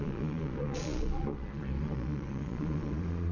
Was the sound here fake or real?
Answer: fake